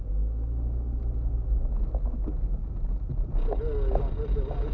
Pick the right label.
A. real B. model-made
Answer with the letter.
A